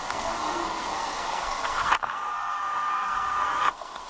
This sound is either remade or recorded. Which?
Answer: remade